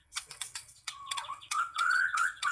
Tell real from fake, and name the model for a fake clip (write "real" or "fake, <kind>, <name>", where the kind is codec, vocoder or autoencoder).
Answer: fake, vocoder, WaveNeXt